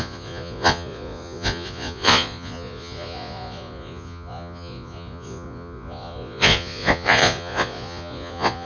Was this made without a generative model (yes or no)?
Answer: no